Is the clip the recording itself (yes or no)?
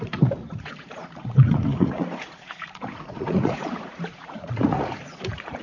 no